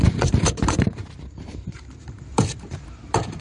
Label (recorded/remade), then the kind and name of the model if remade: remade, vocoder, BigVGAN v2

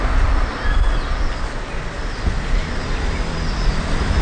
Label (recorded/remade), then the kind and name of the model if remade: recorded